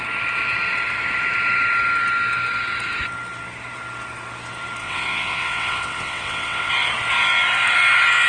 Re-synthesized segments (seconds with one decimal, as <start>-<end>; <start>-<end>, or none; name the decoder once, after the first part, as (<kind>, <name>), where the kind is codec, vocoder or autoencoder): 4.8-6.7 (vocoder, WaveNeXt)